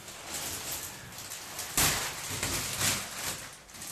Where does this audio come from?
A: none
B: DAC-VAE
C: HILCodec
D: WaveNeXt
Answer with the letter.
A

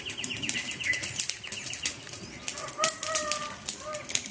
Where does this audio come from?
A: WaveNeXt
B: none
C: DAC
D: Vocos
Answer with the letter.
B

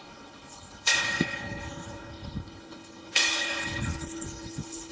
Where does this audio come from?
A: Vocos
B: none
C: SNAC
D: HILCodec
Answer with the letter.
D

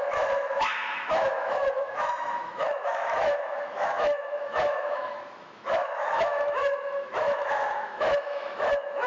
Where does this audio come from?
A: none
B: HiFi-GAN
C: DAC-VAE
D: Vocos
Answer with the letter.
C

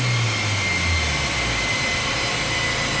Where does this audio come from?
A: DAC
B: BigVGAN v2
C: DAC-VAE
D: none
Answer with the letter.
D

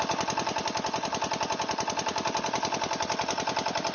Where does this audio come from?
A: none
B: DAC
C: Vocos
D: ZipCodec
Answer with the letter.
A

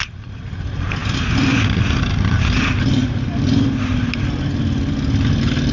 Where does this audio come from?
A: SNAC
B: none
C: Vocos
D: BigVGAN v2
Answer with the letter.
B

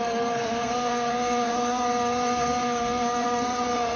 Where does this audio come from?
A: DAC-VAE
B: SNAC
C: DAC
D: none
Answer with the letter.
B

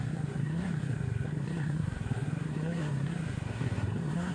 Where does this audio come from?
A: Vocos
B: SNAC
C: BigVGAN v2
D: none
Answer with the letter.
B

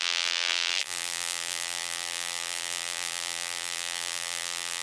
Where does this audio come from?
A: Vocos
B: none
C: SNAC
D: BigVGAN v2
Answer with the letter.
D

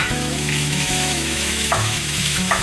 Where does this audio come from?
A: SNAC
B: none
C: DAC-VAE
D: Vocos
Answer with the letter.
C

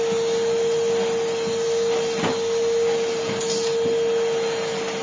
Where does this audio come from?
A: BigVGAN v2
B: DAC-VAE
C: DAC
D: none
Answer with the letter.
D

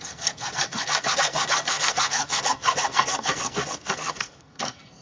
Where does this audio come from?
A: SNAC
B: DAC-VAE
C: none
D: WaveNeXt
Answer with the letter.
A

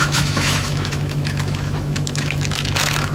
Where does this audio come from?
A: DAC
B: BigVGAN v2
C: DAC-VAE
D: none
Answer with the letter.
C